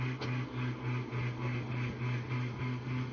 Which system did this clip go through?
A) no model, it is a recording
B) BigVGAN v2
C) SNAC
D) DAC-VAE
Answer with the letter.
A